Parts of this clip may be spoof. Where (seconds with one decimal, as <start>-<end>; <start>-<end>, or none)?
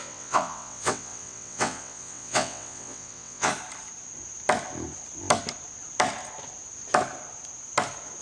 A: 0.0-3.5